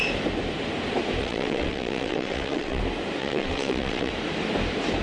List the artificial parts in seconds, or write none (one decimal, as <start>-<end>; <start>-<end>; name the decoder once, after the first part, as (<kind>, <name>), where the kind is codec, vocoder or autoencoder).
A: 1.2-2.8 (vocoder, WaveNeXt); 3.2-4.1